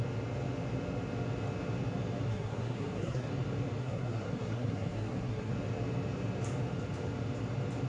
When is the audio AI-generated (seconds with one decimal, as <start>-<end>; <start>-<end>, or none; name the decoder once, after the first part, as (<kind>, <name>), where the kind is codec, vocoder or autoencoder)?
2.3-3.3 (codec, SNAC); 3.8-5.5